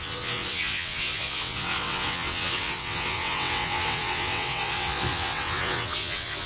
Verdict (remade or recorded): remade